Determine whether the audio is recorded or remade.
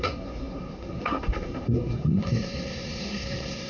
remade